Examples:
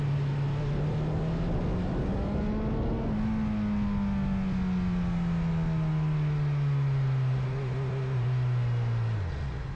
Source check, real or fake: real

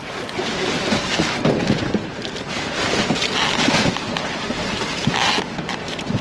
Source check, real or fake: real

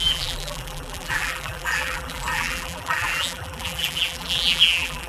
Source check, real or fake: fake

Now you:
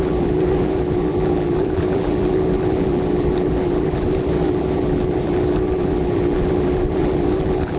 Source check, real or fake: fake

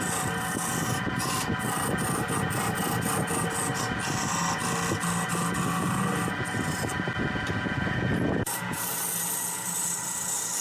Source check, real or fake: real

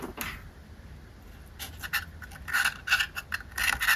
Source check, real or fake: real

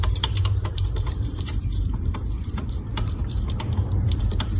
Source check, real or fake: fake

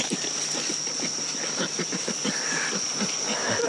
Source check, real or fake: real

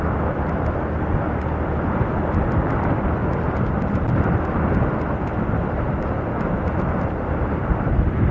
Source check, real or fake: real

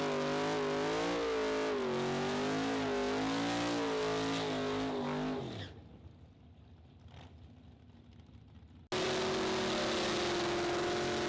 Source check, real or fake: real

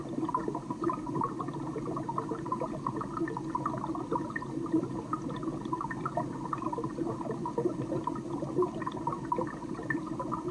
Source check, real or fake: real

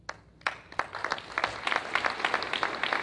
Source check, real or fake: real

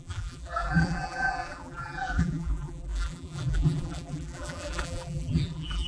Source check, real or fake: fake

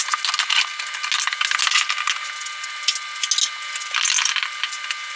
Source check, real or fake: real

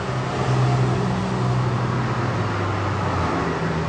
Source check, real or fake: real